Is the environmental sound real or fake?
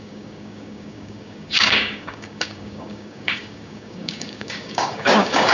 fake